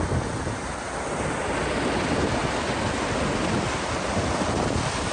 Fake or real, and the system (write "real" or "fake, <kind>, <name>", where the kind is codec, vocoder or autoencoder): real